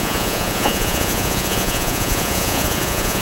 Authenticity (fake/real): fake